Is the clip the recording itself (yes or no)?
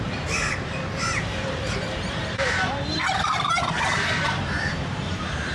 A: no